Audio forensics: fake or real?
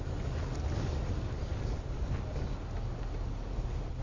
real